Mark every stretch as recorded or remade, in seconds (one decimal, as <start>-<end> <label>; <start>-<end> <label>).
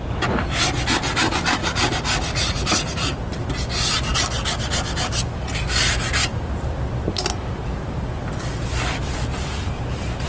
0.0-1.6 recorded; 1.6-3.2 remade; 3.2-10.3 recorded